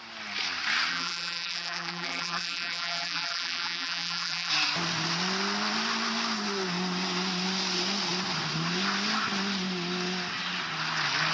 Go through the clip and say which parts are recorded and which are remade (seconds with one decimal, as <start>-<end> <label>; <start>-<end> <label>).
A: 0.0-0.9 recorded; 0.9-4.5 remade; 4.5-11.3 recorded